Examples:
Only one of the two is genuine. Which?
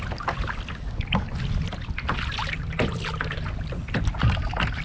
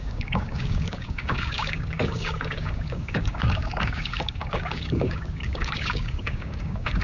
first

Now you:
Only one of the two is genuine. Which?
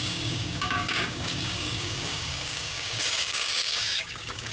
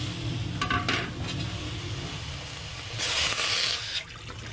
second